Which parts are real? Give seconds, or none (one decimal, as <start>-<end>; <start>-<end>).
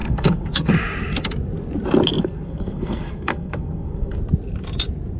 0.7-2.2; 4.2-5.2